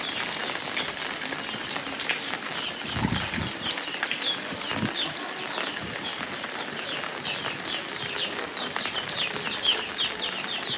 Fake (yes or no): no